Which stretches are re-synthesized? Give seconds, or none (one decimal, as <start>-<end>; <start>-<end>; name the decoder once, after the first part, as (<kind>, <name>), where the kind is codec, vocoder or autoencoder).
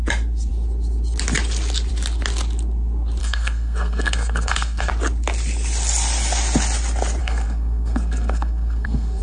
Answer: 3.2-4.9 (codec, SNAC); 7.2-9.2